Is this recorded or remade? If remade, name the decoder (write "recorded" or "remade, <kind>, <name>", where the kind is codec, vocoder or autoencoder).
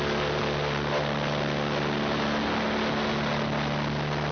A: recorded